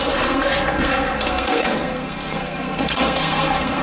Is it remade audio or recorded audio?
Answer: remade